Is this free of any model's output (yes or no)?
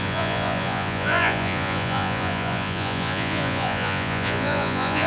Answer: no